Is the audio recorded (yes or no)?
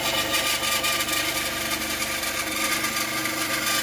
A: yes